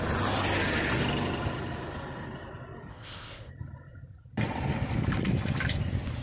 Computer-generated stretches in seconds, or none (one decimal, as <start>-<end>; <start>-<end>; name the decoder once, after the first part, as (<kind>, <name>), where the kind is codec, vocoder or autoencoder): 2.9-3.5 (codec, ZipCodec)

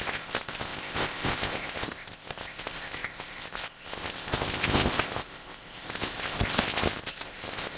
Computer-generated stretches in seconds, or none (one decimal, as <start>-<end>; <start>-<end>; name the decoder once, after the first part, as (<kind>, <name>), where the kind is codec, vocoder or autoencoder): 0.0-7.8 (codec, ZipCodec)

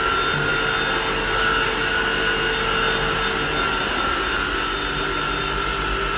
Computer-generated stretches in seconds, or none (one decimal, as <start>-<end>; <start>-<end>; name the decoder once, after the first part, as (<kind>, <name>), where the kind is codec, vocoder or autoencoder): none

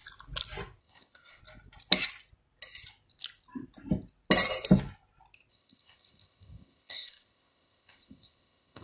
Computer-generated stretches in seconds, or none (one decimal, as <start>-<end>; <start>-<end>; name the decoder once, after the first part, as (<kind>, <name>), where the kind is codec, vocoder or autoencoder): 0.8-1.4 (codec, ZipCodec); 5.5-8.8

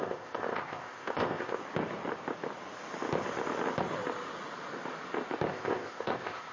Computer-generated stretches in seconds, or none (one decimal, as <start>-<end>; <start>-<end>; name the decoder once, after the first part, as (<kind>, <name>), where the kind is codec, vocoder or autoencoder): 0.0-1.6 (codec, ZipCodec); 5.5-6.5

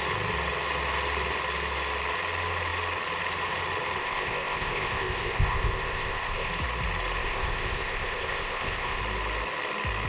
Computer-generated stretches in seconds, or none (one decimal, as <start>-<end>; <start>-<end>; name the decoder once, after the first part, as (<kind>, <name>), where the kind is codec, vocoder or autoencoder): 4.0-6.5 (codec, ZipCodec); 7.2-9.0